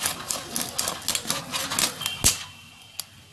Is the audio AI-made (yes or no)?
no